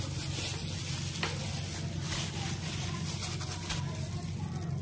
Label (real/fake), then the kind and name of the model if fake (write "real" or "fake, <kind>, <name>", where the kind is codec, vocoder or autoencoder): real